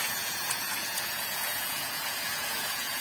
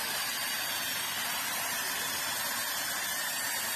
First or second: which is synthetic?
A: first